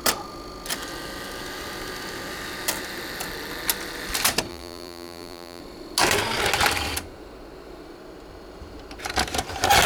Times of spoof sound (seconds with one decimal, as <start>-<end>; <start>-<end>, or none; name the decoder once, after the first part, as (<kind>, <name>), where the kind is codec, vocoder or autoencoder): 4.5-5.6 (vocoder, BigVGAN v2)